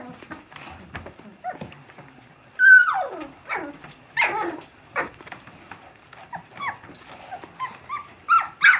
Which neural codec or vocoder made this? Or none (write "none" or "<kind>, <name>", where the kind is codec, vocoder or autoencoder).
none